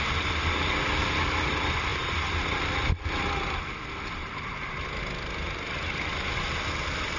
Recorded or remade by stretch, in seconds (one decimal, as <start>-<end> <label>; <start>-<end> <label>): 0.0-7.2 recorded